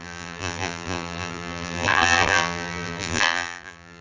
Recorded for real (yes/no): no